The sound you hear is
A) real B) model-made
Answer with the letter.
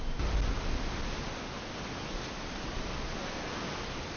A